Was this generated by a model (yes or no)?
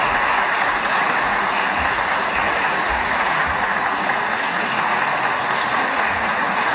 yes